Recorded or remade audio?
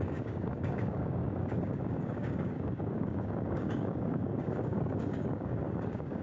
remade